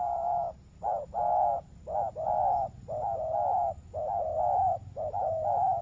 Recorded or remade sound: recorded